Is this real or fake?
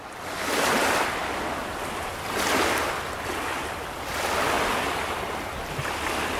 real